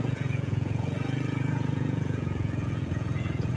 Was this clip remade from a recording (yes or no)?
yes